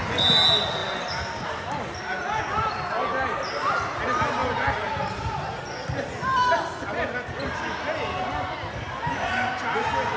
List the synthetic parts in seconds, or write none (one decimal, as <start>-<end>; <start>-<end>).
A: none